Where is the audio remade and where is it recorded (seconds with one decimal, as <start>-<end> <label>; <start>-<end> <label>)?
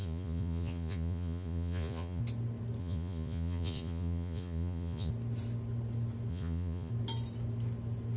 0.0-2.2 remade; 2.2-2.8 recorded; 2.8-5.1 remade; 5.1-6.3 recorded; 6.3-6.9 remade; 6.9-8.2 recorded